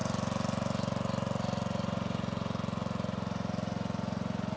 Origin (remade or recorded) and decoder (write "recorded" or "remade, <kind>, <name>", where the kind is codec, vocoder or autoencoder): recorded